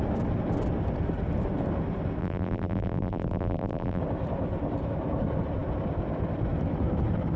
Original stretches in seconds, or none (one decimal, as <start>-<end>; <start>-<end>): 0.0-2.2; 4.0-7.4

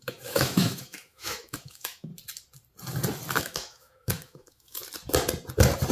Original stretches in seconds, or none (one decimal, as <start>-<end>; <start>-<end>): 2.1-3.4; 4.8-5.9